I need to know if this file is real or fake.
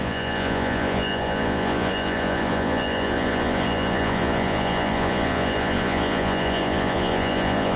fake